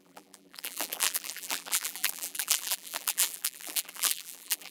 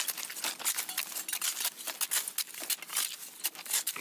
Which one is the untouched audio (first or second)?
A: second